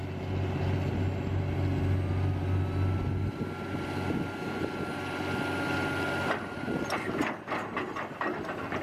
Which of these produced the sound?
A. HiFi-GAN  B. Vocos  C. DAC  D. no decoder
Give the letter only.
D